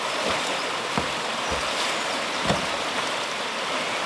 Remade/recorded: remade